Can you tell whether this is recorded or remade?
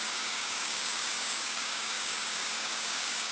remade